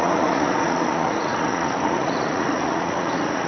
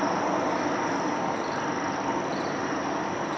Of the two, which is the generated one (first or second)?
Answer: first